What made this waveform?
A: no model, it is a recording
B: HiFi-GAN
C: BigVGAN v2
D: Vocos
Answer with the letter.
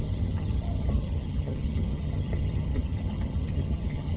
B